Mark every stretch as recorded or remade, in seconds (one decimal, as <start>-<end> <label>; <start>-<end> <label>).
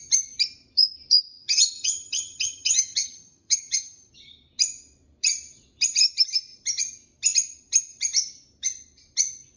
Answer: 0.0-1.3 recorded; 1.3-4.1 remade; 4.1-9.6 recorded